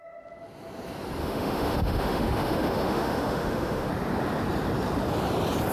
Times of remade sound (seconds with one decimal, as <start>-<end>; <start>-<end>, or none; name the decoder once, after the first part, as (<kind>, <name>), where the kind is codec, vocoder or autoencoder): 1.2-3.9 (autoencoder, DAC-VAE)